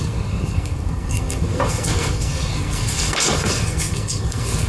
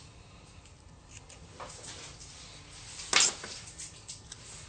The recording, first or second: second